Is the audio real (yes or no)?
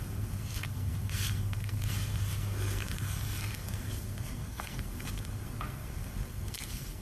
no